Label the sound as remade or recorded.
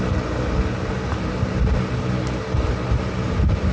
recorded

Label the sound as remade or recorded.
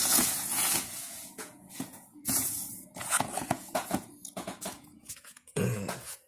remade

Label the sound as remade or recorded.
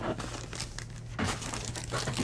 recorded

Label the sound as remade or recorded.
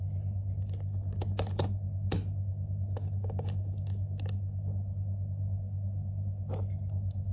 recorded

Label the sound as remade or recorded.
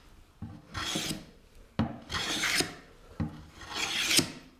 recorded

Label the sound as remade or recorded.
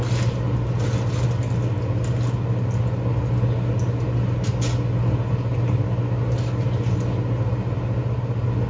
recorded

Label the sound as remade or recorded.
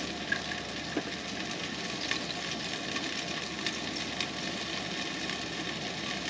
recorded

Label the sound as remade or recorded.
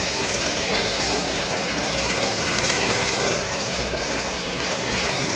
remade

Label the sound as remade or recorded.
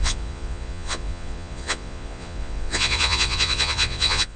remade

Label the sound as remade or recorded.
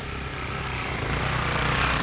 remade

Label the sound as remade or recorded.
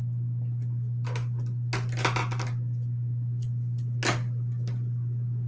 recorded